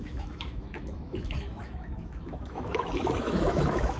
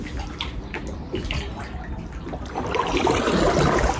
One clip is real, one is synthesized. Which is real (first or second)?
second